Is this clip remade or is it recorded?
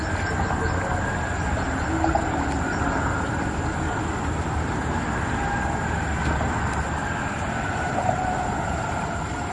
recorded